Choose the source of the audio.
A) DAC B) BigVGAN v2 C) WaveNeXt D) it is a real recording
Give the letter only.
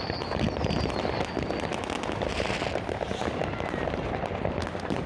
D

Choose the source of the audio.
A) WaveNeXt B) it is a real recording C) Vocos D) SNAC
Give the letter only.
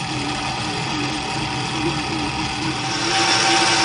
B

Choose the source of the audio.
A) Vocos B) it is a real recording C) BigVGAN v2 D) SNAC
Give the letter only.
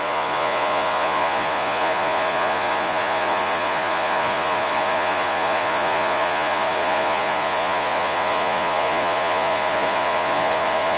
A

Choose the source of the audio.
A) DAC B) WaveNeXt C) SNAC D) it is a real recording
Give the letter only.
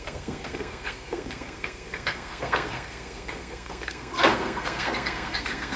C